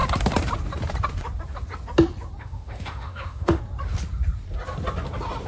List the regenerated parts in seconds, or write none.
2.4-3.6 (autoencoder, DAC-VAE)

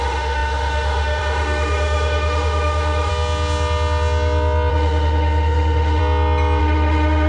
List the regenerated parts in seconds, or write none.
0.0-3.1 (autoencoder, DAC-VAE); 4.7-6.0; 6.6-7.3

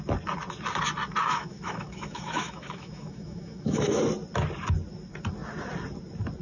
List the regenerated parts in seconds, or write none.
1.2-4.0 (autoencoder, DAC-VAE)

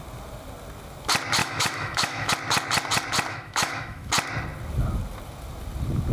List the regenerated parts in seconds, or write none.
1.4-2.3 (autoencoder, DAC-VAE); 3.3-4.1

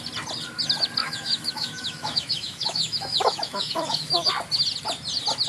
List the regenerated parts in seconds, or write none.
1.0-4.3 (autoencoder, DAC-VAE)

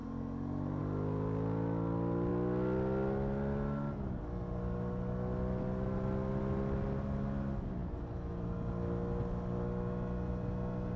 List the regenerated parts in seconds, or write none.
none

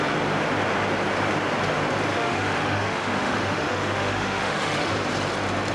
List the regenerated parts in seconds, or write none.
2.1-4.9 (autoencoder, DAC-VAE)